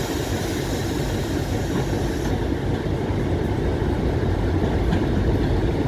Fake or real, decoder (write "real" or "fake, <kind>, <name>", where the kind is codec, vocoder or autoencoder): real